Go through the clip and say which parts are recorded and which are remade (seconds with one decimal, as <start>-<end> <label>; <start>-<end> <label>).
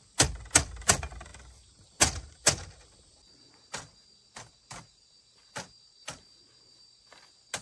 0.0-7.6 recorded